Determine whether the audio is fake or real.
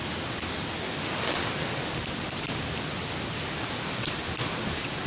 real